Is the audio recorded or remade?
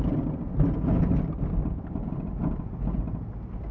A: recorded